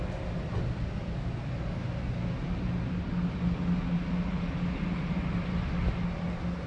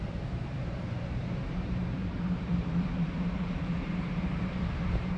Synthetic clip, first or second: second